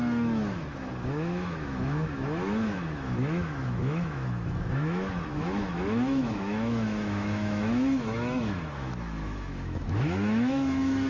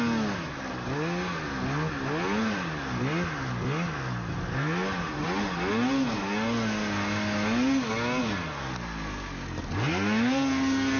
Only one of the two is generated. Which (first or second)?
first